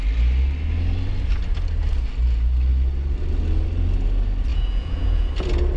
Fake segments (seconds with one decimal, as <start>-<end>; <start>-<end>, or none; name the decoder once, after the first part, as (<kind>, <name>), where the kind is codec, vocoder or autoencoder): 4.5-5.3 (vocoder, Vocos)